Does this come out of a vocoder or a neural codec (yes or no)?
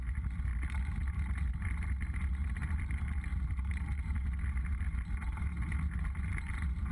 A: no